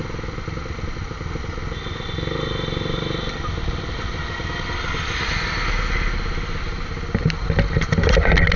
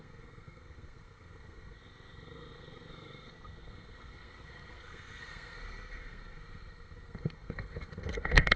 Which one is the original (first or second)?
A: first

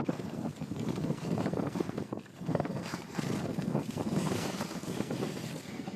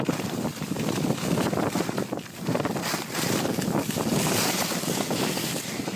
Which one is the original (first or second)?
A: second